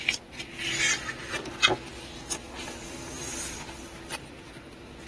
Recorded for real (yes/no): yes